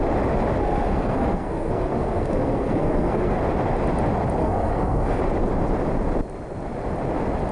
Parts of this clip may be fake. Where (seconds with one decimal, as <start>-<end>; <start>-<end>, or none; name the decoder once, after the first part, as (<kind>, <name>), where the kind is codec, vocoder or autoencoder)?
0.6-3.4 (codec, SNAC); 4.4-5.2